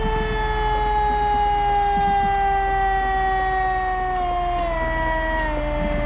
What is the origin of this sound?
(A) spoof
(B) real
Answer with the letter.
B